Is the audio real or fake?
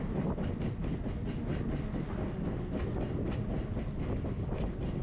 real